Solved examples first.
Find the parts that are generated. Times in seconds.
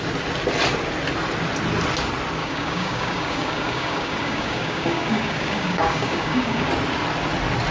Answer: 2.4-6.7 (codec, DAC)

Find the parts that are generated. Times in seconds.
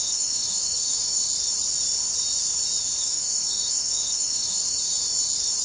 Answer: 0.0-1.2 (autoencoder, DAC-VAE); 3.0-4.6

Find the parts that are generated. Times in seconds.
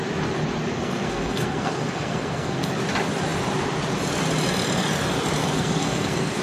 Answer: 0.7-2.7 (codec, SNAC); 5.4-6.4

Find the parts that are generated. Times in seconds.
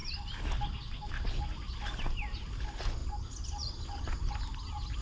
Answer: none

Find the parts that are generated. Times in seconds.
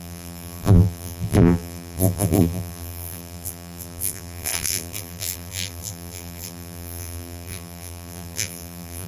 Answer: 0.0-9.1 (vocoder, BigVGAN v2)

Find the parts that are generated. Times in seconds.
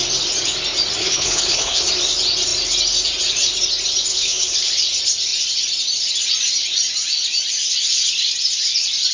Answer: 1.0-1.8 (codec, HILCodec); 4.1-4.7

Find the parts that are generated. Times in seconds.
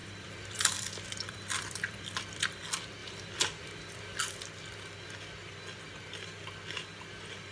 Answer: 0.0-2.6 (vocoder, BigVGAN v2); 3.0-4.2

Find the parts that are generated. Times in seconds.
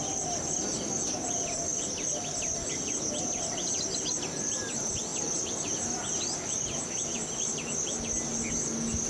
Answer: none